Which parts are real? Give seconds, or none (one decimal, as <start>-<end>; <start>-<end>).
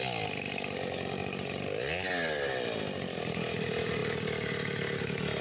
0.0-5.4